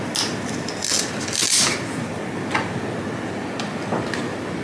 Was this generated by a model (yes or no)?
no